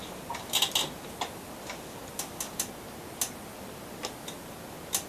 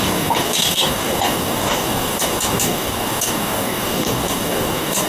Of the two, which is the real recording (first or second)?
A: first